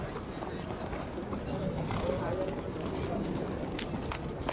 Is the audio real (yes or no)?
yes